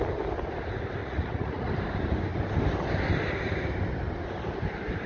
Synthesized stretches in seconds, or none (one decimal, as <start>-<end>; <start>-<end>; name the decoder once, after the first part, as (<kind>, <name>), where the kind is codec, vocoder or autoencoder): 1.0-1.7 (vocoder, Vocos)